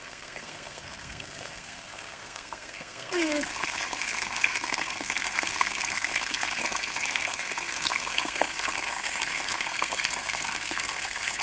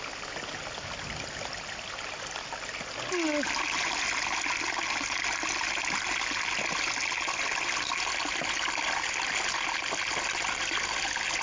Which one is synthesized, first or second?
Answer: first